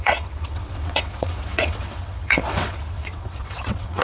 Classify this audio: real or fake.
fake